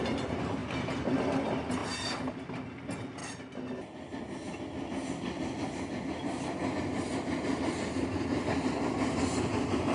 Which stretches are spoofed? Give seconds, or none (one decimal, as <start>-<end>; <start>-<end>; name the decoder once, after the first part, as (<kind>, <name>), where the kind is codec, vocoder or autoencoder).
1.8-2.3 (vocoder, BigVGAN v2)